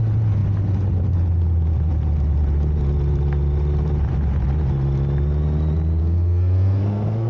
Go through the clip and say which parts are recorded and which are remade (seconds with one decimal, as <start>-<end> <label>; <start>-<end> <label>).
0.0-6.0 recorded; 6.0-7.3 remade